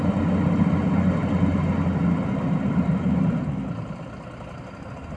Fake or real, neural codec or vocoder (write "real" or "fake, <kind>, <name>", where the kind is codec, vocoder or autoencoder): real